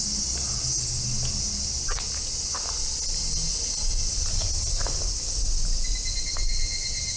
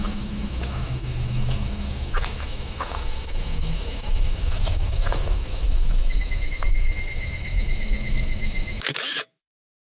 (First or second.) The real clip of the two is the first